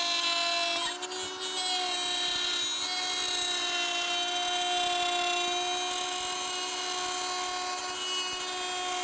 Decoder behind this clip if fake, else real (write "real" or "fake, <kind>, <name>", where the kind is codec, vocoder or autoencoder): real